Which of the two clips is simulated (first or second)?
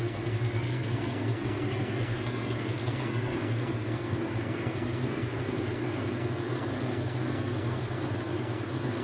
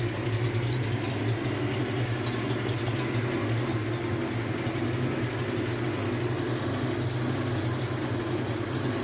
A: first